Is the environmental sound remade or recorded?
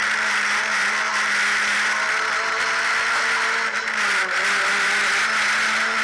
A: recorded